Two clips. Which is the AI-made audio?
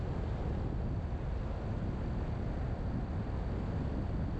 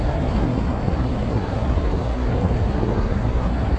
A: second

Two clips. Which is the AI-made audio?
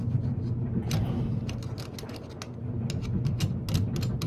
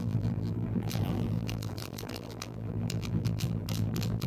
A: second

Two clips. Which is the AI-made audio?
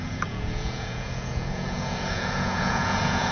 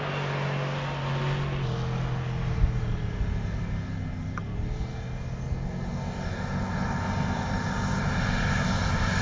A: first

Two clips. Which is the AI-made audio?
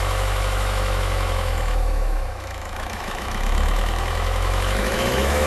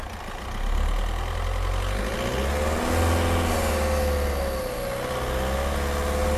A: first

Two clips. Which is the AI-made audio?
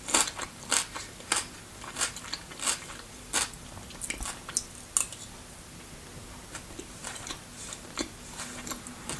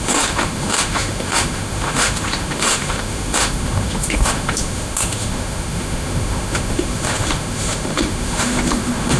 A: second